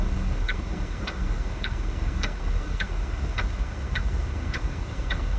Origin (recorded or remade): remade